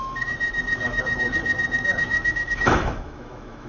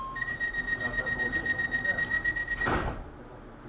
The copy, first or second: first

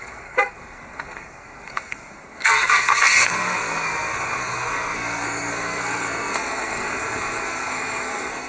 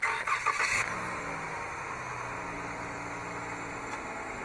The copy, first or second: first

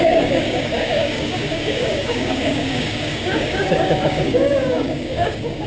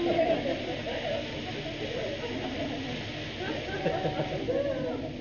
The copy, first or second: first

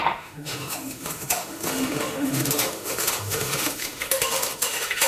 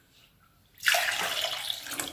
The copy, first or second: first